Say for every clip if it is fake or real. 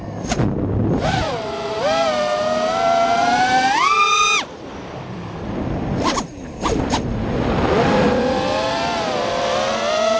real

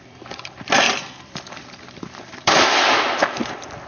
fake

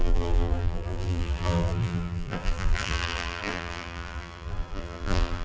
fake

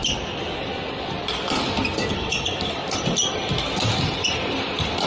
real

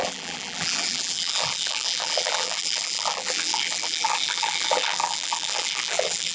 fake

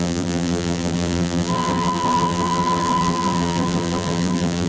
fake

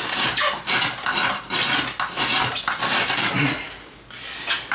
real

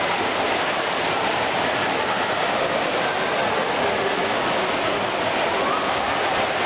real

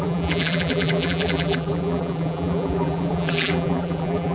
fake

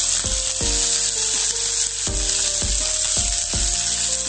real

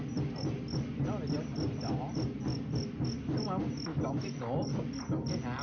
real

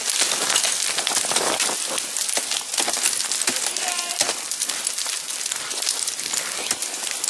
fake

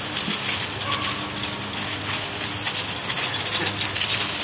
real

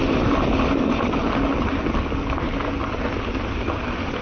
real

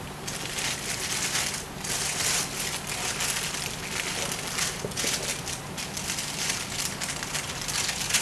real